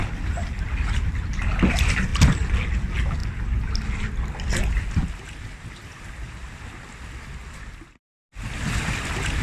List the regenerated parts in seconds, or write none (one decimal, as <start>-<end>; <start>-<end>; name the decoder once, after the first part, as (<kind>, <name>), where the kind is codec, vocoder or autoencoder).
none